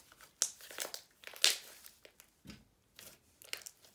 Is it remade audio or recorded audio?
recorded